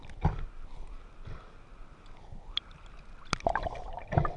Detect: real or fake real